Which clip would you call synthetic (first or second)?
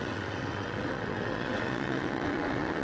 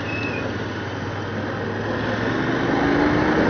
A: first